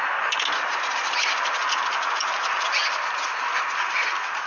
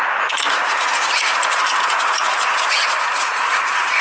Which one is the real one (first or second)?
first